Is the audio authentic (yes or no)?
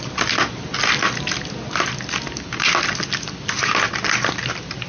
yes